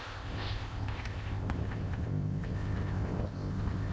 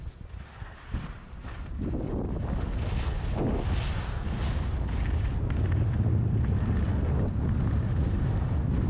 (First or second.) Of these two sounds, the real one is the second